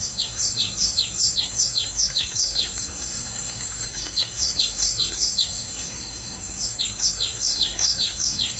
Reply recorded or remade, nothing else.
remade